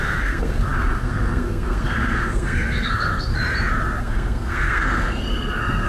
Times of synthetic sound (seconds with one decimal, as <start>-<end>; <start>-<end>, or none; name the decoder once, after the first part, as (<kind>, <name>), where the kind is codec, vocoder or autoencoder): 0.0-3.3 (codec, SNAC); 4.0-5.9